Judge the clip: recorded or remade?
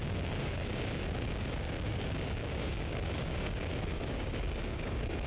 remade